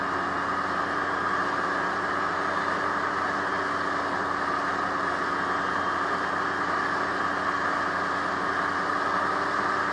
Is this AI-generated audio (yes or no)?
no